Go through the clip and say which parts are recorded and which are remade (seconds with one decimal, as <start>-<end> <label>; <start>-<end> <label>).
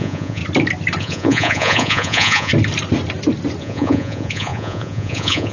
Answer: 0.0-0.4 remade; 0.4-1.0 recorded; 1.0-2.5 remade; 2.5-3.6 recorded; 3.6-5.5 remade